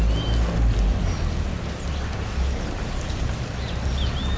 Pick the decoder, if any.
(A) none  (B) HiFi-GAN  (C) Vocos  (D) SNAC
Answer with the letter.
A